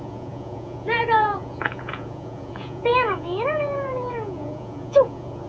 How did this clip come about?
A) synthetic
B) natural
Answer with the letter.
A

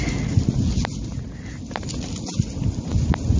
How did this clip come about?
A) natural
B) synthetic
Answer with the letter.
A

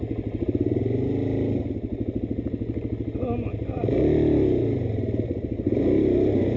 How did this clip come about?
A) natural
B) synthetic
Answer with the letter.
A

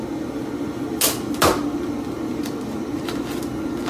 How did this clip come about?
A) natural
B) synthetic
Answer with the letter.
A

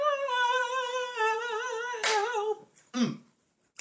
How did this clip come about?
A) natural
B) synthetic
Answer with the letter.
B